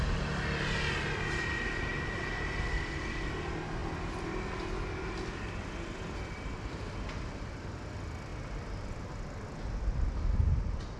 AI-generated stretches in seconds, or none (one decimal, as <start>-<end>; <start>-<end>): none